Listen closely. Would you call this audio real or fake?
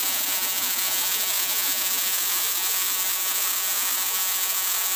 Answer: fake